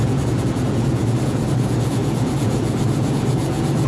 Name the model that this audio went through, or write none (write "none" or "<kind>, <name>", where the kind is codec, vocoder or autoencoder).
vocoder, Vocos